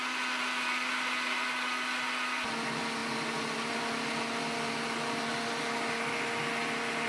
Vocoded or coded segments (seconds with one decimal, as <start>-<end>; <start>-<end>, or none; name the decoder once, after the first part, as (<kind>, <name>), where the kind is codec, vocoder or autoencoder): none